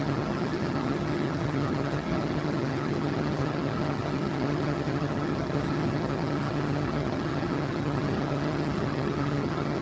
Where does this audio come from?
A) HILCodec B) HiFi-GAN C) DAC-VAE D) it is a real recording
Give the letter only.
B